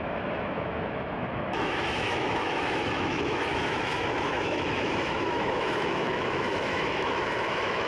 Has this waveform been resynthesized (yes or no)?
yes